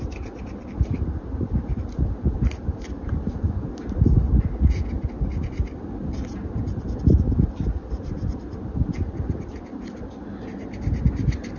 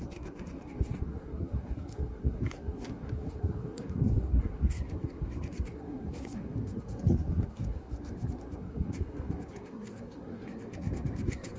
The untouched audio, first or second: first